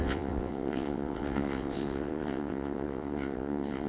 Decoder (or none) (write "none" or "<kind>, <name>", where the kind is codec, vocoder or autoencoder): vocoder, WaveNeXt